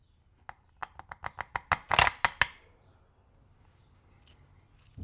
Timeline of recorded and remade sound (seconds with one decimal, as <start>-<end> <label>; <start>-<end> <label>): 0.0-5.0 recorded